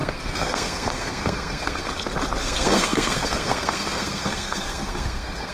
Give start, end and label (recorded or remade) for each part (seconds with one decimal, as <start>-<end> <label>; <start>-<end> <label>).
0.0-1.8 remade; 1.8-2.4 recorded; 2.4-5.5 remade